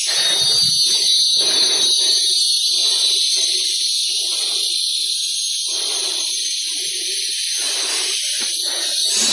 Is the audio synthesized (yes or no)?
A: no